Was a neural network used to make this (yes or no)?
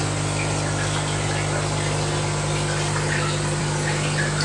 no